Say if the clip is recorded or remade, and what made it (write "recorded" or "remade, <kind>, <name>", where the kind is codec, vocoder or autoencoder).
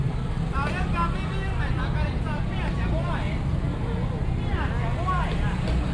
recorded